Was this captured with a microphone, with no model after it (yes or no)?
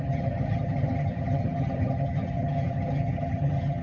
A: no